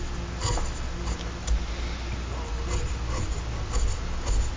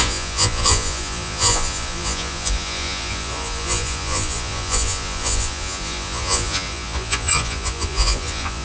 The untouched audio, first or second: first